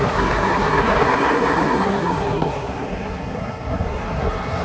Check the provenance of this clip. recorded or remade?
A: remade